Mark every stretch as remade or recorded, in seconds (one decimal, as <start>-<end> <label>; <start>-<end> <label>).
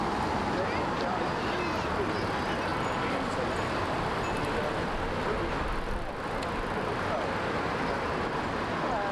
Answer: 0.0-9.1 recorded